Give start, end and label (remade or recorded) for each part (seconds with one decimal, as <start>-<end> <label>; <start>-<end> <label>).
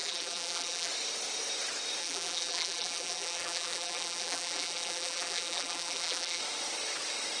0.0-0.9 remade; 0.9-2.0 recorded; 2.0-6.4 remade; 6.4-7.4 recorded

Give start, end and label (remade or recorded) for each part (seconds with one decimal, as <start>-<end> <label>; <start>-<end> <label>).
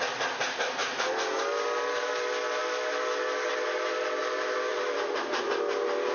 0.0-4.7 recorded; 4.7-5.5 remade; 5.5-6.1 recorded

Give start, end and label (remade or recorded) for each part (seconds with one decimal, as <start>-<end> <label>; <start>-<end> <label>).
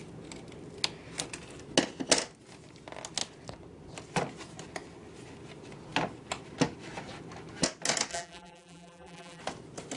0.0-8.1 recorded; 8.1-9.4 remade; 9.4-10.0 recorded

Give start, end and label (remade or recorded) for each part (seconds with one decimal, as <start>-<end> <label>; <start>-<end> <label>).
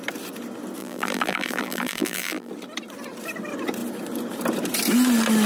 0.0-0.8 recorded; 0.8-2.5 remade; 2.5-5.5 recorded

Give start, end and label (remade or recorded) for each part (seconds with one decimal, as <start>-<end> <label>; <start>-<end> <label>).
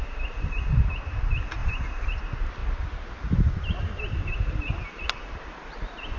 0.0-1.6 recorded; 1.6-2.1 remade; 2.1-6.2 recorded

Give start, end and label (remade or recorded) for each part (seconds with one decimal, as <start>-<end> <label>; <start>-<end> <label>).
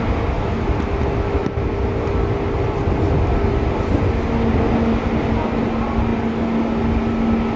0.0-7.6 recorded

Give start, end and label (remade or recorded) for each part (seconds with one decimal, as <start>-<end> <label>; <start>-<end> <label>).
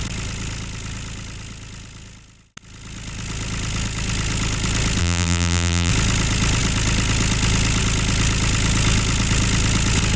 0.0-5.0 recorded; 5.0-5.9 remade; 5.9-10.2 recorded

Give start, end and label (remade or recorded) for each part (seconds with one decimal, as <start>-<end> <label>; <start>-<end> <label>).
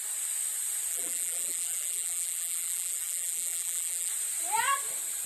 0.0-0.9 recorded; 0.9-4.1 remade; 4.1-5.3 recorded